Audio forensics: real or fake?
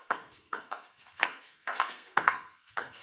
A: fake